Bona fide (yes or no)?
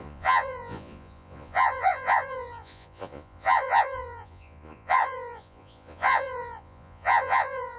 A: no